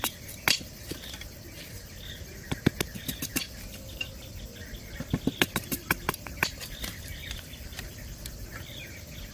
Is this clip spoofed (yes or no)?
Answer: no